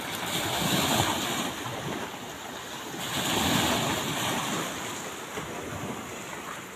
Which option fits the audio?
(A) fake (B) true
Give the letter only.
B